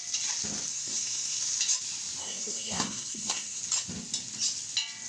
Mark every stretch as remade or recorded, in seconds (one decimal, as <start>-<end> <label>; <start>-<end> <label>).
0.0-0.7 recorded; 0.7-1.4 remade; 1.4-2.2 recorded; 2.2-3.6 remade; 3.6-5.1 recorded

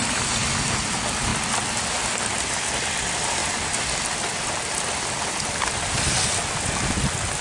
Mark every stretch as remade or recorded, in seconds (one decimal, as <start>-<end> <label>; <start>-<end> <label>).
0.0-7.4 recorded